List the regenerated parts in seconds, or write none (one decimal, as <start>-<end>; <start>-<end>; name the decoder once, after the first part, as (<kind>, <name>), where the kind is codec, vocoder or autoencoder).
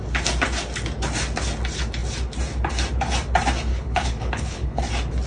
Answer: 3.7-4.8 (codec, HILCodec)